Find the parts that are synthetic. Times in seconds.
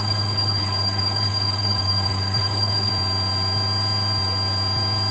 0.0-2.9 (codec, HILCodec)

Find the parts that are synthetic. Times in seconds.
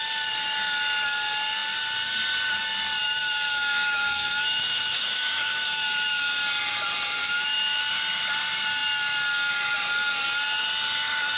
3.0-6.3 (autoencoder, DAC-VAE); 7.2-7.8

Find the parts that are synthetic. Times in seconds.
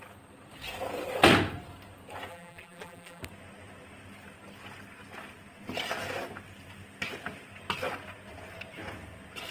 2.3-3.2 (vocoder, BigVGAN v2)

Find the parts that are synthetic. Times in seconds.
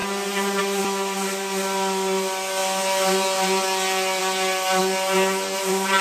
none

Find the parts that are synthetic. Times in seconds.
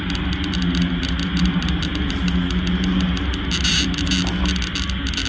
none